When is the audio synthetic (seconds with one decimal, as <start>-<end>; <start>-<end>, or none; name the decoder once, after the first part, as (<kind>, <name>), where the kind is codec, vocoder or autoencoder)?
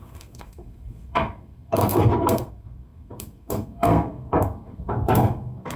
0.0-5.8 (codec, SNAC)